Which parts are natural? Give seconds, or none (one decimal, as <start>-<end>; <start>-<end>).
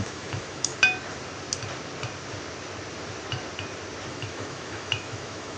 0.7-4.1